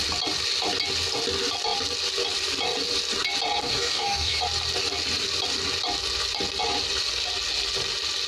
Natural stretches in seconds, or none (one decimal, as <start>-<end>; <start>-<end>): 0.0-3.6; 4.4-8.3